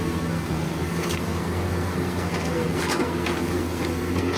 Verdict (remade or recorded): remade